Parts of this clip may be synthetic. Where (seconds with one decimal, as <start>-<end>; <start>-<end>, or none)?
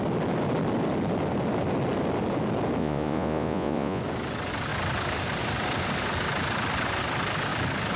2.8-4.0